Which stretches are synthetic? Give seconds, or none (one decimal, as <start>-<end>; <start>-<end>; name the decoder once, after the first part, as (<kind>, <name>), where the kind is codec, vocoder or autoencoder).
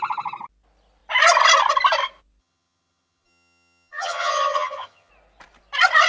2.4-5.1 (vocoder, HiFi-GAN)